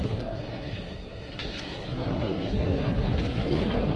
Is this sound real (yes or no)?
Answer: no